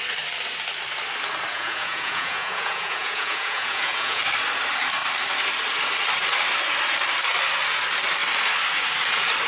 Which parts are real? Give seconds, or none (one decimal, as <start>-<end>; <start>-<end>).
0.0-1.5; 4.2-9.5